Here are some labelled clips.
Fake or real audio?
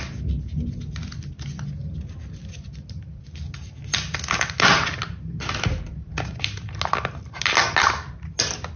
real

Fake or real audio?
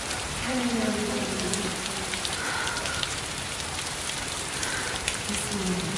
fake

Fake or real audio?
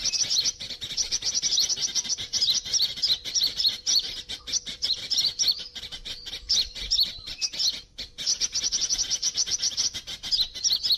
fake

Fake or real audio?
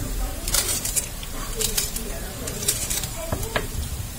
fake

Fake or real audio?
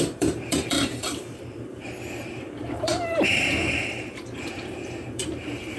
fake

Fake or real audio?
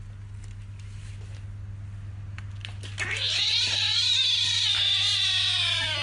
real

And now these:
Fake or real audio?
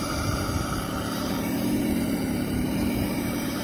fake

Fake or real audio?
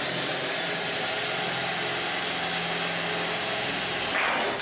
real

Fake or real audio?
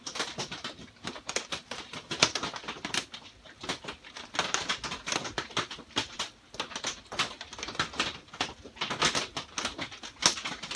real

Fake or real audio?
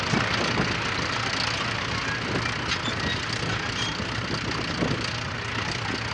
real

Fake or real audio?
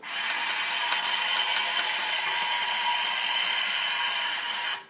real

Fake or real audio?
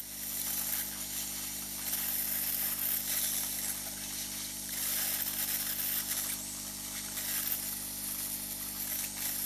real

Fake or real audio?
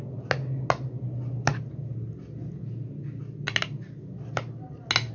real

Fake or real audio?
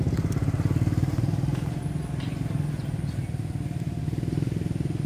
real